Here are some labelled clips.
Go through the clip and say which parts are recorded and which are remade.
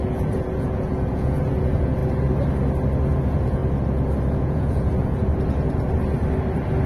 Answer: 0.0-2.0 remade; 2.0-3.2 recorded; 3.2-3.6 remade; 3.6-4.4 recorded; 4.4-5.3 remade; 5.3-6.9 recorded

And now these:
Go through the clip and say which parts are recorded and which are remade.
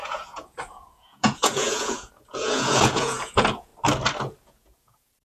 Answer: 0.0-3.7 remade; 3.7-4.4 recorded; 4.4-5.4 remade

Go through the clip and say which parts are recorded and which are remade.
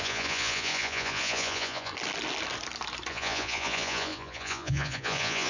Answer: 0.0-1.9 remade; 1.9-3.1 recorded; 3.1-5.5 remade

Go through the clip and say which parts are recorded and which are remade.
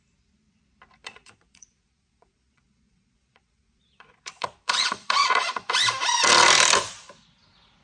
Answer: 0.0-1.0 recorded; 1.0-5.7 remade; 5.7-7.8 recorded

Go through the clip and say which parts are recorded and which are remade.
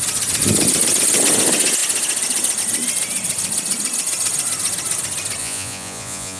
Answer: 0.0-5.4 recorded; 5.4-6.4 remade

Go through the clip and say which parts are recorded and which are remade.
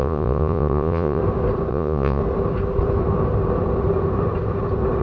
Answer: 0.0-1.2 remade; 1.2-1.7 recorded; 1.7-2.2 remade; 2.2-5.0 recorded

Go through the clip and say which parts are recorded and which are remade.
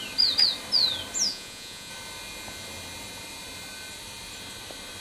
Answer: 0.0-1.3 recorded; 1.3-1.9 remade; 1.9-5.0 recorded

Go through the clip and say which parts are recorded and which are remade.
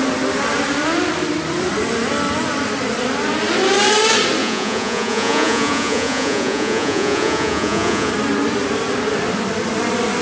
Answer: 0.0-4.4 recorded; 4.4-8.1 remade; 8.1-10.2 recorded